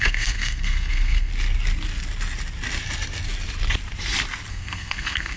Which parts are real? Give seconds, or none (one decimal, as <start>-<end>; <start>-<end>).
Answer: 1.3-4.5